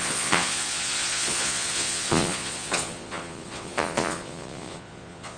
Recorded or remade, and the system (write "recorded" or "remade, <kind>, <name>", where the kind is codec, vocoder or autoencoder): remade, vocoder, Vocos